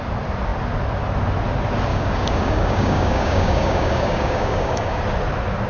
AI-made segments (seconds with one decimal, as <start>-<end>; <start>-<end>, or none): 1.9-5.0